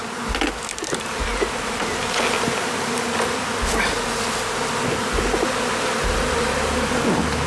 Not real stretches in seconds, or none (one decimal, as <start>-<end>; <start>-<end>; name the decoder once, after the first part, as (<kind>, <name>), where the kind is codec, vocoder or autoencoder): none

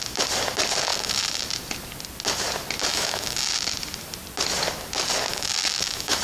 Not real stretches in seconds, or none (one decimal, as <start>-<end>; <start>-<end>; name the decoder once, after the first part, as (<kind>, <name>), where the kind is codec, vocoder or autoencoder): 0.9-1.4 (autoencoder, DAC-VAE); 2.9-3.5; 5.3-6.2

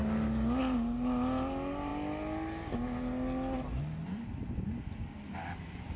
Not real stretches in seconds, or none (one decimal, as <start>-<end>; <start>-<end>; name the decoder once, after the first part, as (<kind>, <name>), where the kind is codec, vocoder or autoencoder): none

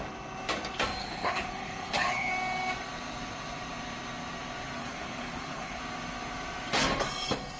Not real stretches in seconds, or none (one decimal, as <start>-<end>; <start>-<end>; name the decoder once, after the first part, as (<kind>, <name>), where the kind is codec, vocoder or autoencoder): 1.0-2.3 (codec, HILCodec); 4.8-5.8

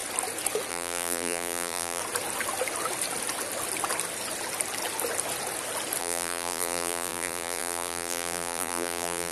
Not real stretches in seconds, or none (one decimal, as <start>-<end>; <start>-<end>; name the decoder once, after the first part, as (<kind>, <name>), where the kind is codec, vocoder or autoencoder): 0.7-2.0 (vocoder, BigVGAN v2); 6.0-9.3

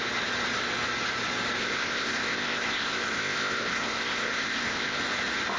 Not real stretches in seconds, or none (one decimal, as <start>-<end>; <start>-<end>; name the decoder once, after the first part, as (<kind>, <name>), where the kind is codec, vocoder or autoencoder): 1.6-5.0 (codec, ZipCodec)

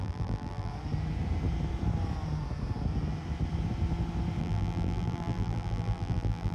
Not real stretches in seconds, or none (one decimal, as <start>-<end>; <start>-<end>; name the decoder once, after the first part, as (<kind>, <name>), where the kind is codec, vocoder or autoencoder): 0.0-0.7 (vocoder, BigVGAN v2); 4.4-6.5